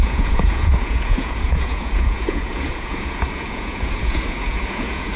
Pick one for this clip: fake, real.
fake